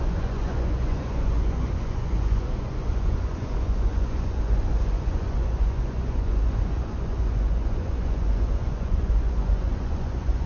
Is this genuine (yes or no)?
no